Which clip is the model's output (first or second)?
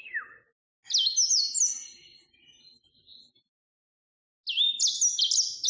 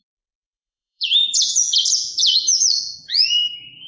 second